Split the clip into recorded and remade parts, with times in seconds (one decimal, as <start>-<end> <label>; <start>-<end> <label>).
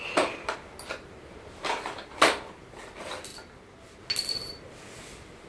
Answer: 0.0-5.5 recorded